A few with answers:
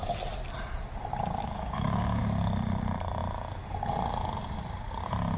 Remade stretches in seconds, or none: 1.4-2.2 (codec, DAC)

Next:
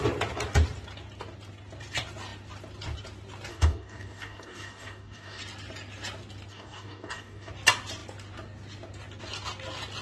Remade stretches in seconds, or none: 3.5-5.4 (codec, DAC); 6.5-7.5

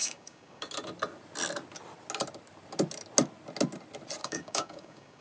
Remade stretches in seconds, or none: 0.0-0.7 (codec, DAC); 4.2-5.2

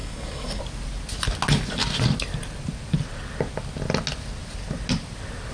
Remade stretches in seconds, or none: 0.0-0.6 (codec, DAC)

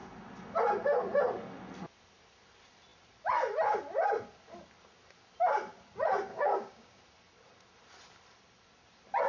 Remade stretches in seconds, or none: 6.3-7.0 (codec, DAC)